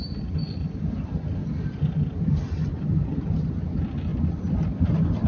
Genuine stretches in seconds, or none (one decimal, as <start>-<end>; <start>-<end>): 0.4-3.6